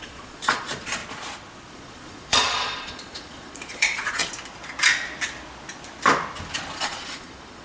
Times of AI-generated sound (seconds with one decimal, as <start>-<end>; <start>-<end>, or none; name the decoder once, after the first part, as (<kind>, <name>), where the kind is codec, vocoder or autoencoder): 0.0-1.0 (vocoder, Vocos); 1.7-4.2; 6.8-7.6